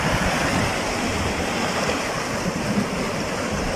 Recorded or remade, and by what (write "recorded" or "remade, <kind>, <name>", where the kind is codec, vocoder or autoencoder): recorded